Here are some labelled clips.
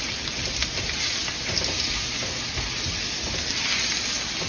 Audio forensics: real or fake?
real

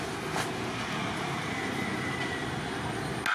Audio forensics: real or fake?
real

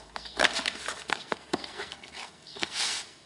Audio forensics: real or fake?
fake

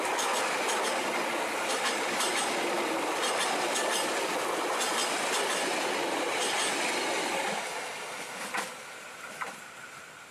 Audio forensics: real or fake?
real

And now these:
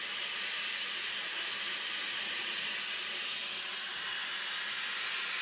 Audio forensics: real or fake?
real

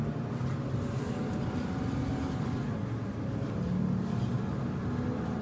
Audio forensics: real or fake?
real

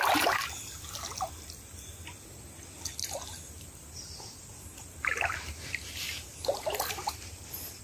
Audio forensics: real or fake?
real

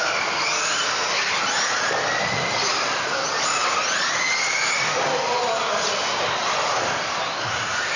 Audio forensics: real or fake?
real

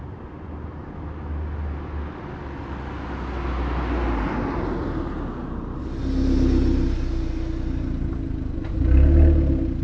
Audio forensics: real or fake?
real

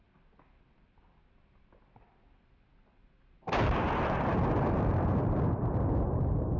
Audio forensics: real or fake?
real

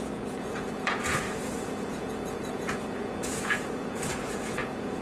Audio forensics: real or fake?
fake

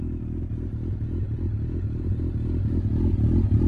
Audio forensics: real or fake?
real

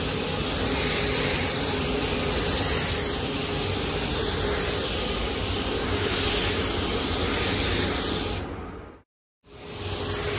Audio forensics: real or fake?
real